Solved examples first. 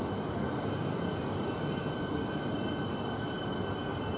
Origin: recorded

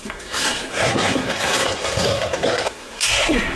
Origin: remade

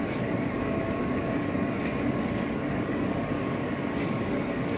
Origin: remade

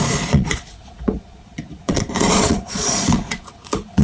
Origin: remade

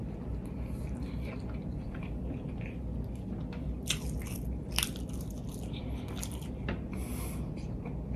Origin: recorded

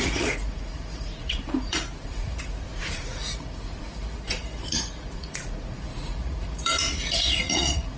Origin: remade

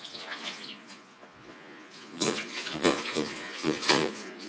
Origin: remade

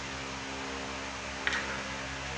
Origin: recorded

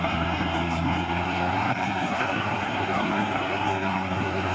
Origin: remade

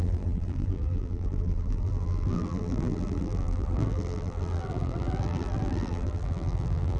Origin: remade